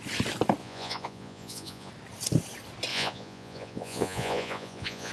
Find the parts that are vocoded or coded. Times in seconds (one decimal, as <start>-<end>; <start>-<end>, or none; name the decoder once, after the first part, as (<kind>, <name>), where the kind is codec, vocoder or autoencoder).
0.6-1.9 (vocoder, Vocos); 2.9-5.1